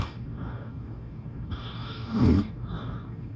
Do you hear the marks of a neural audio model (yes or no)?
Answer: yes